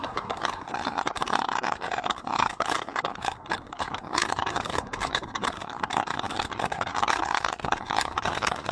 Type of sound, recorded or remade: remade